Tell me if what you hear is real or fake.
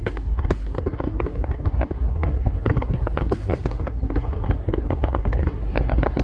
fake